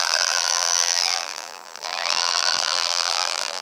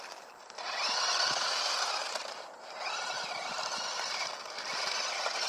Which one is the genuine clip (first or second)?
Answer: second